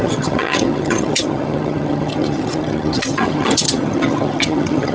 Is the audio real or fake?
fake